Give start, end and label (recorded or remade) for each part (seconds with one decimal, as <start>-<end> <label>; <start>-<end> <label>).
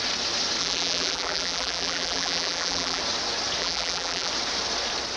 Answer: 0.0-0.6 recorded; 0.6-3.0 remade; 3.0-3.6 recorded; 3.6-4.3 remade; 4.3-5.2 recorded